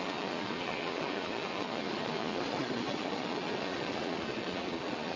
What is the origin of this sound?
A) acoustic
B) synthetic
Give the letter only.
B